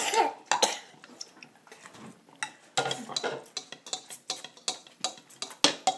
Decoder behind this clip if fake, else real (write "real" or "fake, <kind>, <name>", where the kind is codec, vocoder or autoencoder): real